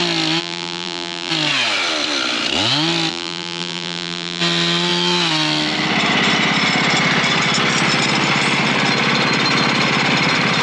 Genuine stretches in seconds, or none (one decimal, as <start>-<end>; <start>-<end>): 0.0-0.4; 1.3-3.1; 4.4-10.6